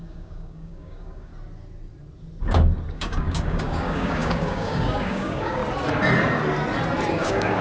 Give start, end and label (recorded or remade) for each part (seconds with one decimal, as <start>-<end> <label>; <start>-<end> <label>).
0.0-1.3 remade; 1.3-2.9 recorded; 2.9-5.6 remade; 5.6-7.1 recorded; 7.1-7.6 remade